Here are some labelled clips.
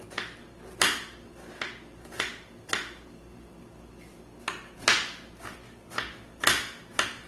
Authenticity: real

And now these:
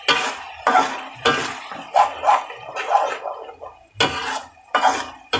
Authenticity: real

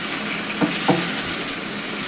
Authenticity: real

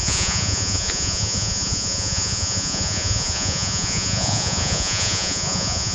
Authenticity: fake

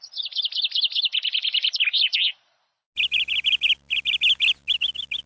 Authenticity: real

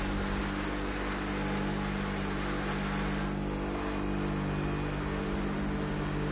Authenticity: real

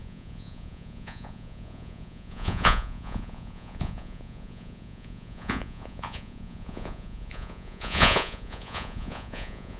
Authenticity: fake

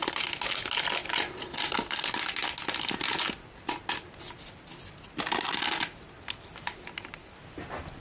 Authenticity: real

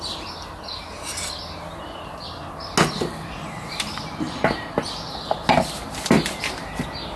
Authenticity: real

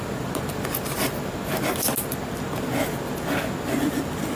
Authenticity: real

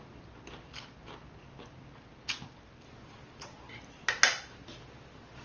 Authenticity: real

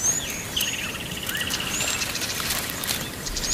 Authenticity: real